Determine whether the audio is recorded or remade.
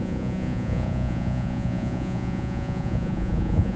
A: remade